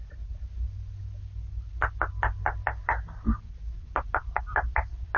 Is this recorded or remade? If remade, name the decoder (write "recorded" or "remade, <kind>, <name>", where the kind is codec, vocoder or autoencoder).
recorded